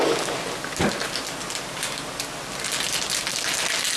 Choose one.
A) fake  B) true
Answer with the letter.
B